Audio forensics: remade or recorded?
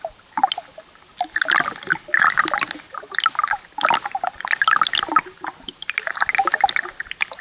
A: recorded